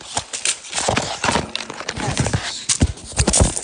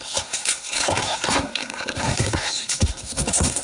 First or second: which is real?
first